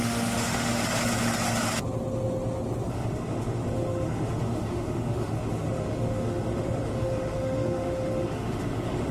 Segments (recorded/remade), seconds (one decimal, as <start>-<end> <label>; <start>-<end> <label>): 0.0-0.8 remade; 0.8-2.9 recorded; 2.9-9.1 remade